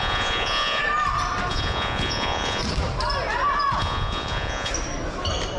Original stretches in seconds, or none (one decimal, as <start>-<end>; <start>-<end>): 0.8-1.5; 2.6-3.8; 4.7-5.6